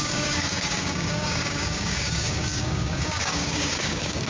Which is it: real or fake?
fake